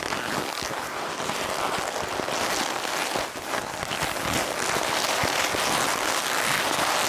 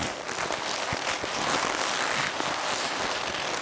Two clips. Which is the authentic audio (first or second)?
first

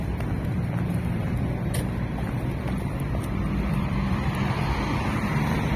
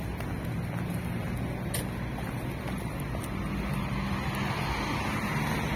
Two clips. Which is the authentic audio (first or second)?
second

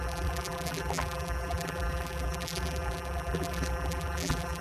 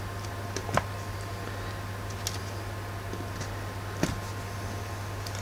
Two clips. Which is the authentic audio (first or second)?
second